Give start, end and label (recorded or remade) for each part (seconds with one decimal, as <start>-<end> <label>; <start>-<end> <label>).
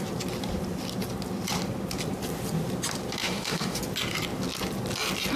0.0-3.2 recorded; 3.2-3.8 remade; 3.8-5.4 recorded